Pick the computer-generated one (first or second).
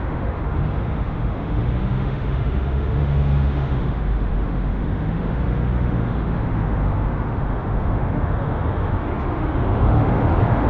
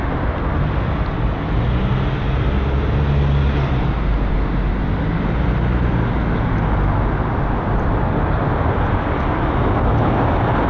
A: first